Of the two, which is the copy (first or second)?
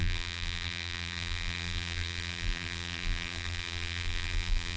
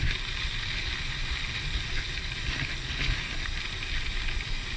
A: first